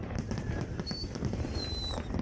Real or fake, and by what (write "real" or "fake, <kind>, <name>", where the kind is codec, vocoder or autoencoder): fake, vocoder, BigVGAN v2